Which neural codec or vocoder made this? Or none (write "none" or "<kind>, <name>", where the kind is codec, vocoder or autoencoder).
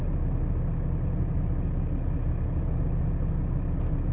none